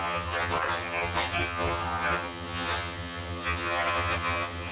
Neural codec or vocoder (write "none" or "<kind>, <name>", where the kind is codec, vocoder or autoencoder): vocoder, HiFi-GAN